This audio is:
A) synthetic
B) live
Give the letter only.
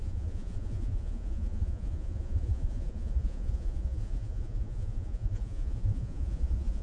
A